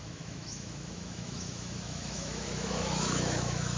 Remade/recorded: remade